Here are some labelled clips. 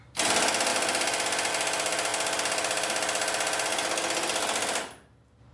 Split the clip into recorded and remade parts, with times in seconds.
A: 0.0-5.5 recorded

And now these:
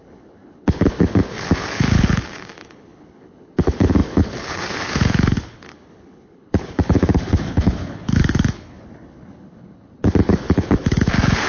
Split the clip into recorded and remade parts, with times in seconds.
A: 0.0-11.5 remade

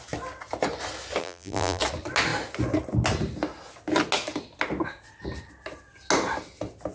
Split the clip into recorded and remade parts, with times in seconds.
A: 0.0-1.2 recorded; 1.2-1.8 remade; 1.8-6.9 recorded